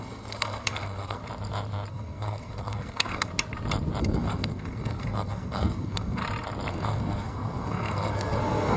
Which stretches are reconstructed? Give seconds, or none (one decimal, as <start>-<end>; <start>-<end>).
0.0-1.2; 1.9-3.3; 4.0-6.2; 6.7-8.8